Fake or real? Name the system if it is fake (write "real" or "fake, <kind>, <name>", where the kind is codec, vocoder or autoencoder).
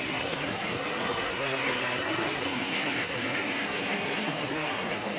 fake, codec, SNAC